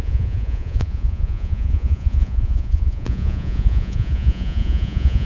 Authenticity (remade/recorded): remade